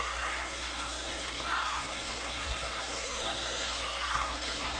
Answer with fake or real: fake